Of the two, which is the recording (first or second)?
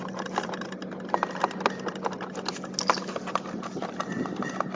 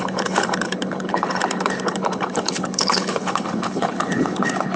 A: first